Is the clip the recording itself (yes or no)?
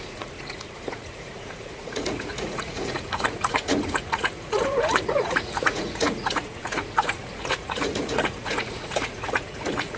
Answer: no